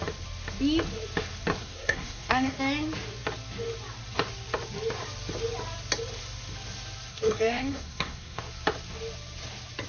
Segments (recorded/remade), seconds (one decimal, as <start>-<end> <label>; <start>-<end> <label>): 0.0-1.6 recorded; 1.6-2.6 remade; 2.6-7.1 recorded; 7.1-8.4 remade; 8.4-9.9 recorded